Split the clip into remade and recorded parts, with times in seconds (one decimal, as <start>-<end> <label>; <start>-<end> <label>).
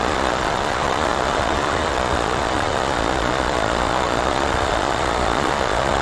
0.0-6.0 remade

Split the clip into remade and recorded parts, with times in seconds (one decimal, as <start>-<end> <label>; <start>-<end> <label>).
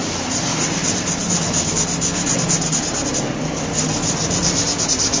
0.0-5.2 recorded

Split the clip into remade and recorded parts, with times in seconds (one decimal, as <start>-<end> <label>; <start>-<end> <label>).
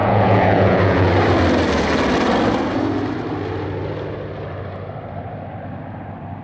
0.0-1.1 remade; 1.1-6.4 recorded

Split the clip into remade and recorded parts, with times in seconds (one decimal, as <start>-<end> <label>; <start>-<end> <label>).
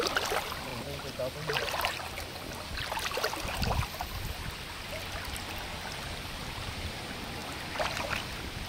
0.0-8.7 recorded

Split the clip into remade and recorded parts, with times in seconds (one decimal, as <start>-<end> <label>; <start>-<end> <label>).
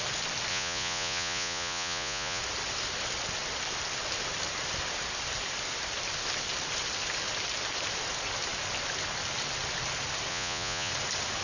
0.0-0.5 recorded; 0.5-2.4 remade; 2.4-10.3 recorded; 10.3-10.9 remade; 10.9-11.4 recorded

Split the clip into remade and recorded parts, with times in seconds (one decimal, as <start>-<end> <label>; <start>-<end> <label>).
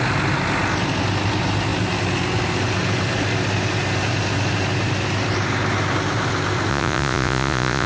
0.0-6.7 recorded; 6.7-7.9 remade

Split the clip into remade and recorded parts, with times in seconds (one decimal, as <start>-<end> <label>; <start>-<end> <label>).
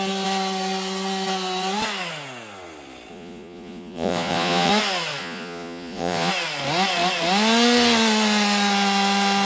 0.0-3.1 recorded; 3.1-4.7 remade; 4.7-5.2 recorded; 5.2-6.3 remade; 6.3-9.5 recorded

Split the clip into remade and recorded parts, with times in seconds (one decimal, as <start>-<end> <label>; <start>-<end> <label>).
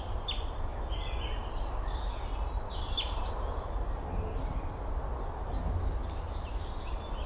0.0-7.3 recorded